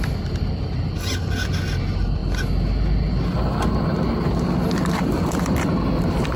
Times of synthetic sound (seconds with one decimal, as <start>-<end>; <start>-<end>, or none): none